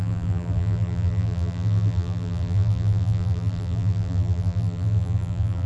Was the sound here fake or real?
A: fake